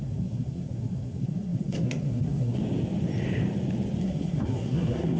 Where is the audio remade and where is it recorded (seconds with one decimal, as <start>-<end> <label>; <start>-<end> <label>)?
0.0-2.6 remade; 2.6-4.0 recorded; 4.0-5.2 remade